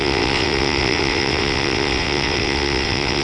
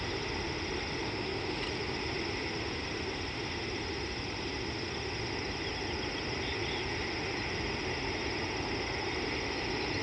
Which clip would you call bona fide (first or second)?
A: second